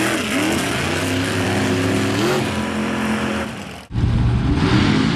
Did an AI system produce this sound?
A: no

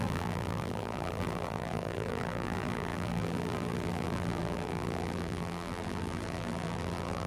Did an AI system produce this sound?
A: yes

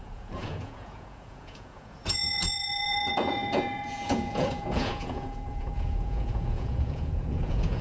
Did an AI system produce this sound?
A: yes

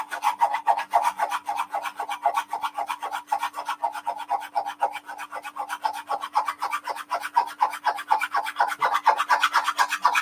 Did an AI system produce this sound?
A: no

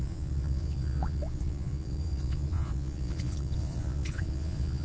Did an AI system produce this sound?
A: yes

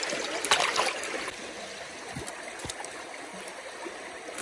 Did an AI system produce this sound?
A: yes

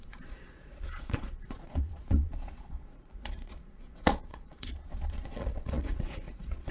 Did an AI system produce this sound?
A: yes